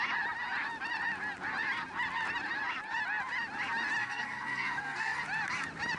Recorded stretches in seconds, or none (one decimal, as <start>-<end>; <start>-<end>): 0.0-4.0; 5.2-6.0